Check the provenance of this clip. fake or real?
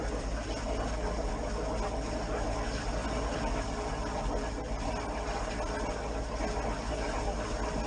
real